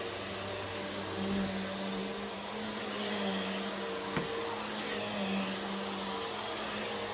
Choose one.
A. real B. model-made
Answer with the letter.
A